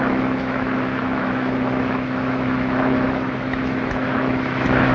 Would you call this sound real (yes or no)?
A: no